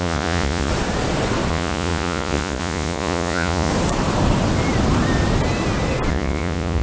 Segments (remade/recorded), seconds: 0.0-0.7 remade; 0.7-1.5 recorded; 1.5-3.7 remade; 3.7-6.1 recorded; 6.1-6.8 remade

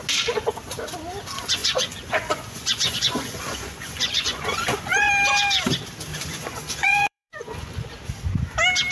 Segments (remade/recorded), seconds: 0.0-1.6 recorded; 1.6-5.1 remade; 5.1-6.1 recorded; 6.1-8.0 remade; 8.0-8.9 recorded

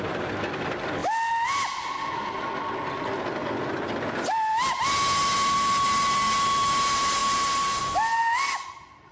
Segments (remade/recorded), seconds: 0.0-9.1 recorded

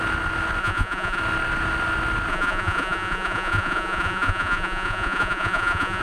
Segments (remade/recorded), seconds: 0.0-0.6 recorded; 0.6-1.2 remade; 1.2-2.3 recorded; 2.3-6.0 remade

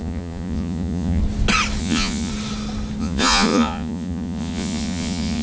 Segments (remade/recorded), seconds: 0.0-1.2 remade; 1.2-1.8 recorded; 1.8-2.3 remade; 2.3-3.0 recorded; 3.0-5.4 remade

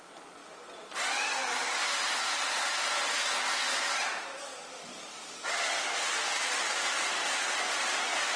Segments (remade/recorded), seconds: 0.0-8.4 recorded

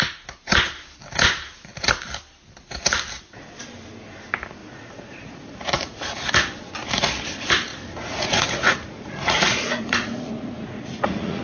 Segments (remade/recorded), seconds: 0.0-4.6 recorded; 4.6-6.5 remade; 6.5-7.7 recorded; 7.7-11.4 remade

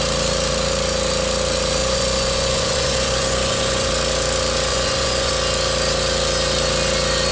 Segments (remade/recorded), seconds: 0.0-1.8 recorded; 1.8-3.9 remade; 3.9-4.7 recorded; 4.7-5.3 remade; 5.3-7.3 recorded